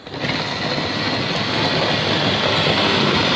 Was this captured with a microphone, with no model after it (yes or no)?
yes